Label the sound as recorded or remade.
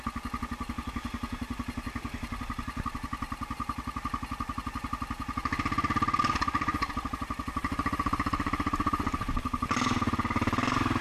recorded